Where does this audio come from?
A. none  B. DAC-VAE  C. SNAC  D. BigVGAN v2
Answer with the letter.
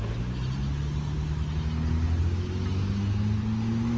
A